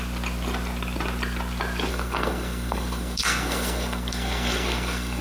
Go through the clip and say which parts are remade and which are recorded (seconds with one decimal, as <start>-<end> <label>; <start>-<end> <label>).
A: 0.0-1.9 recorded; 1.9-5.2 remade